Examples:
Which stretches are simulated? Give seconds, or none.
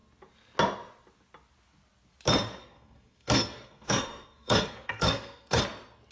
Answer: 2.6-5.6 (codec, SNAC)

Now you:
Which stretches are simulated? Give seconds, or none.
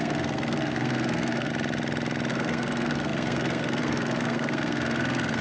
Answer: 0.0-1.5 (codec, SNAC); 2.3-5.4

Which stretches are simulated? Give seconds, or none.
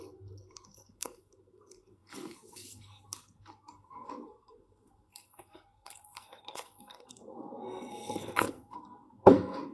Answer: 0.0-9.7 (codec, SNAC)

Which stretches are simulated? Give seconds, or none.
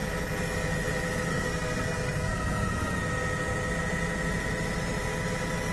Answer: 1.3-3.0 (codec, SNAC)